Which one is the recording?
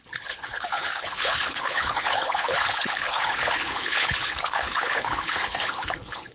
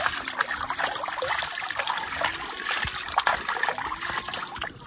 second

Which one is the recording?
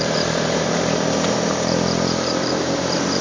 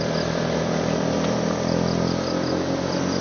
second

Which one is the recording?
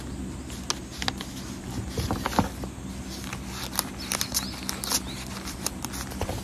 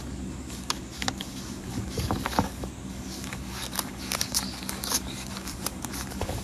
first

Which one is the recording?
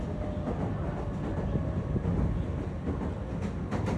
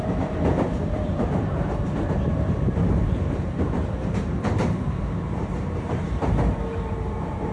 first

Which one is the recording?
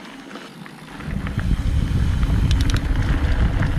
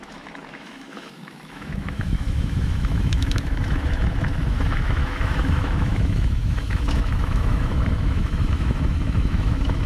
first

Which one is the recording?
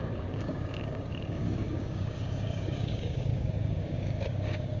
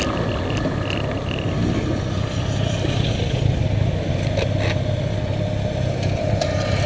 second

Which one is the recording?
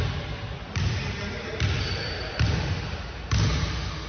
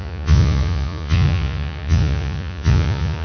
first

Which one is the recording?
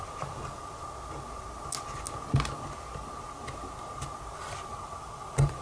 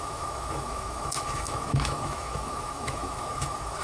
first